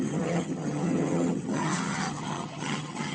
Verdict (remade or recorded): remade